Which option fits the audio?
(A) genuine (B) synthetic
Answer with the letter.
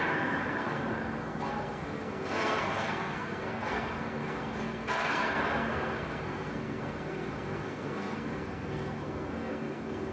B